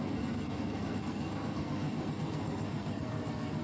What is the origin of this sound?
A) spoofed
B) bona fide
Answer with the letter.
A